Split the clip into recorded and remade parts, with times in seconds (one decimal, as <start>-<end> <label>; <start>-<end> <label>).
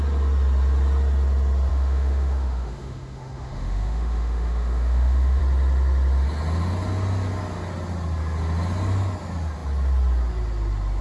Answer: 0.0-1.7 recorded; 1.7-5.4 remade; 5.4-11.0 recorded